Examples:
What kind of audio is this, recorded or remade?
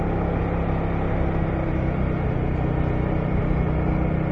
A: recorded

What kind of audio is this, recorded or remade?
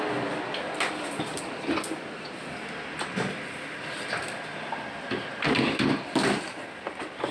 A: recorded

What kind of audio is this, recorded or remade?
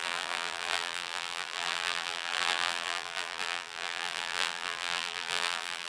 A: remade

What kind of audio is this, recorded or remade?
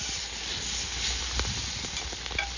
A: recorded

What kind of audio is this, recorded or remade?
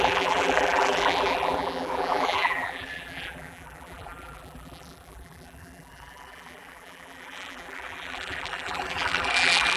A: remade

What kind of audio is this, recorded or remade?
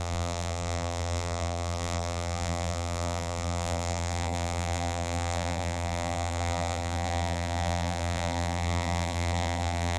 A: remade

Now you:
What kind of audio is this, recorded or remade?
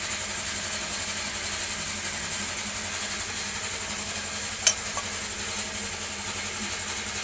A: recorded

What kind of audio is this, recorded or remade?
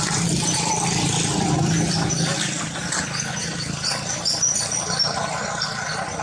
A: recorded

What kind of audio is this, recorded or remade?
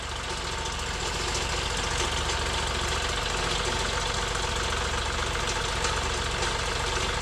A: recorded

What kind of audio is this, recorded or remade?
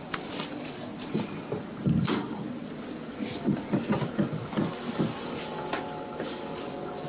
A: remade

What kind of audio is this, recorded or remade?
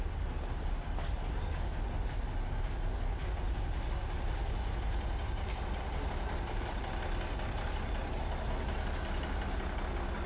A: recorded